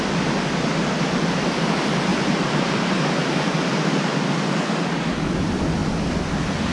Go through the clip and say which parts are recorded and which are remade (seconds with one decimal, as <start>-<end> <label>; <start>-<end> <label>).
0.0-2.1 recorded; 2.1-4.3 remade; 4.3-6.7 recorded